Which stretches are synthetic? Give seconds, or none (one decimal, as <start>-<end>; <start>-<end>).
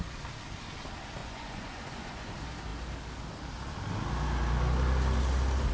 1.2-2.3